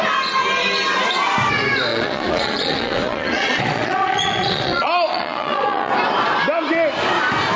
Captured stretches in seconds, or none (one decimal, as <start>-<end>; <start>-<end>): 0.0-1.9; 5.9-7.6